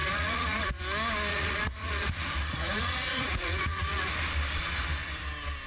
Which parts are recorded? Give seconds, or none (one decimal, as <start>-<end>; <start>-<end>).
0.8-1.3; 4.1-5.7